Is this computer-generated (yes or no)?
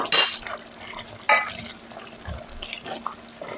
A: no